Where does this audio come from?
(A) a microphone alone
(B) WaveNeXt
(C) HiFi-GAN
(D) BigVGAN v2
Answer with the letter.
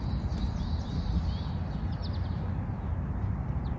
A